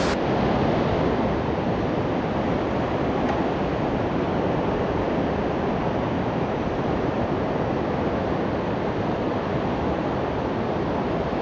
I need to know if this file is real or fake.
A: real